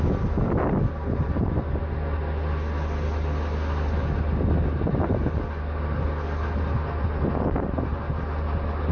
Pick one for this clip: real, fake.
real